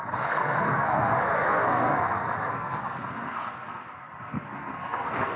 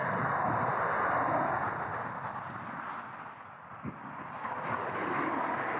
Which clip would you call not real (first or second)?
first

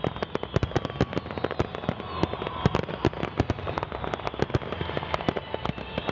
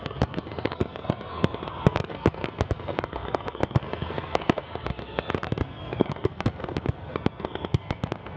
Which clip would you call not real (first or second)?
second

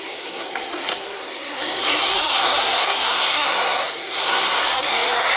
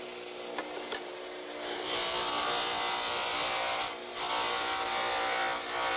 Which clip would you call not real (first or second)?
first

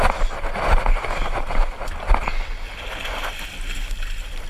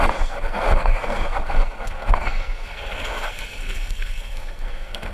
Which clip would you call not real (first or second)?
second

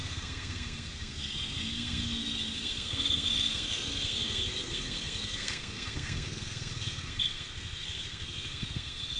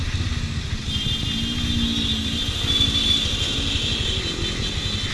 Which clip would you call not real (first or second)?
first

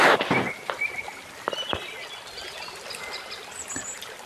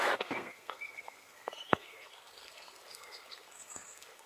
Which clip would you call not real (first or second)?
second